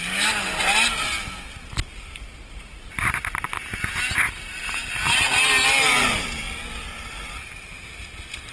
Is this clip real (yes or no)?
yes